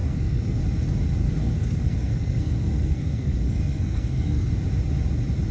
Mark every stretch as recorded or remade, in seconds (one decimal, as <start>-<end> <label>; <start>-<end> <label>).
0.0-0.6 remade; 0.6-1.2 recorded; 1.2-4.5 remade; 4.5-5.5 recorded

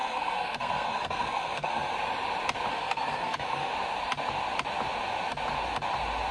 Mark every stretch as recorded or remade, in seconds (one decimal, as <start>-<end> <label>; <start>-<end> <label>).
0.0-1.9 remade; 1.9-2.7 recorded; 2.7-3.7 remade; 3.7-6.3 recorded

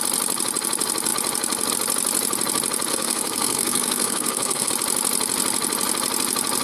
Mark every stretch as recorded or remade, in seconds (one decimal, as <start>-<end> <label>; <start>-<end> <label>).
0.0-2.9 recorded; 2.9-4.7 remade; 4.7-6.6 recorded

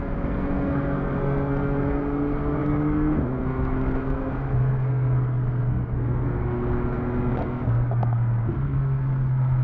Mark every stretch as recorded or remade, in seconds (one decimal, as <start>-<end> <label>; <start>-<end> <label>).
0.0-9.6 remade

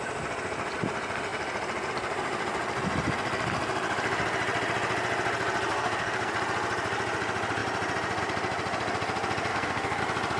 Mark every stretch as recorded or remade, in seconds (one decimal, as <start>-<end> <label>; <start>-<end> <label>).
0.0-5.7 recorded; 5.7-6.3 remade; 6.3-9.5 recorded; 9.5-10.0 remade; 10.0-10.4 recorded

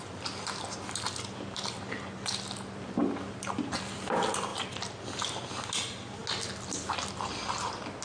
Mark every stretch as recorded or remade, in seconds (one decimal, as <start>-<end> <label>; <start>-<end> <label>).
0.0-8.0 recorded